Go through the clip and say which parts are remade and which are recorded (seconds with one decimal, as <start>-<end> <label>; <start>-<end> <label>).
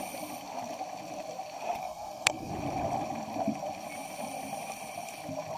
0.0-1.8 recorded; 1.8-2.5 remade; 2.5-5.6 recorded